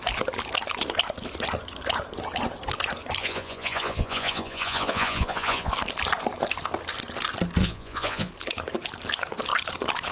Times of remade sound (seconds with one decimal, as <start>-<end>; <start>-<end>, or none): 3.2-5.7; 7.6-8.3